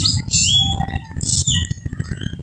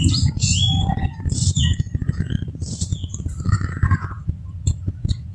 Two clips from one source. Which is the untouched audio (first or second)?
first